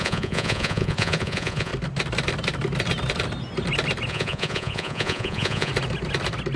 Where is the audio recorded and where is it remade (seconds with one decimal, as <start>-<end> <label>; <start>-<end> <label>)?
0.0-1.7 remade; 1.7-4.1 recorded; 4.1-5.7 remade; 5.7-6.6 recorded